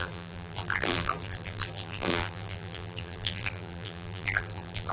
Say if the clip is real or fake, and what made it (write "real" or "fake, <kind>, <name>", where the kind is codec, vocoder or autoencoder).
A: fake, vocoder, BigVGAN v2